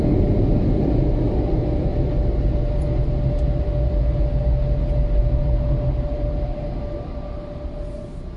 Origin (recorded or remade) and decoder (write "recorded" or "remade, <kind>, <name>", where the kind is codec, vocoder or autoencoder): recorded